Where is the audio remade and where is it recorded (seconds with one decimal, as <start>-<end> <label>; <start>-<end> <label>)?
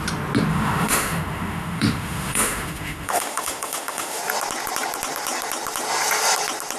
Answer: 0.0-0.5 recorded; 0.5-4.2 remade; 4.2-6.8 recorded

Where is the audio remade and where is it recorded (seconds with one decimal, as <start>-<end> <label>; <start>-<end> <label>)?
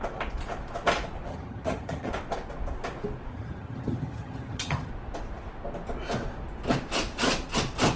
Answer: 0.0-1.3 recorded; 1.3-2.1 remade; 2.1-3.3 recorded; 3.3-4.9 remade; 4.9-8.0 recorded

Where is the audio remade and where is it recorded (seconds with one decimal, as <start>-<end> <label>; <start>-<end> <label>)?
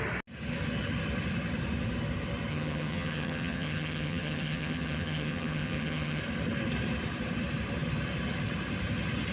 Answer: 0.0-2.5 recorded; 2.5-6.2 remade; 6.2-9.3 recorded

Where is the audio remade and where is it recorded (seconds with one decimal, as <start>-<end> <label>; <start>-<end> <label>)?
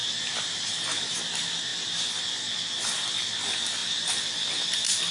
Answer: 0.0-1.1 remade; 1.1-5.1 recorded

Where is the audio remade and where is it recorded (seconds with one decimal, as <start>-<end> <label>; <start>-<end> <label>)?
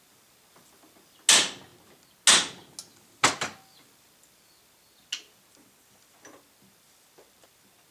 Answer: 0.0-7.9 recorded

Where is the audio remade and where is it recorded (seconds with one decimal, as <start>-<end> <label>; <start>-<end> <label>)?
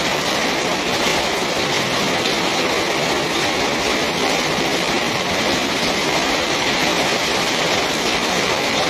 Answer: 0.0-1.1 remade; 1.1-4.2 recorded; 4.2-6.9 remade; 6.9-7.5 recorded; 7.5-8.9 remade